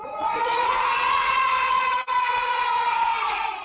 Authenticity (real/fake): fake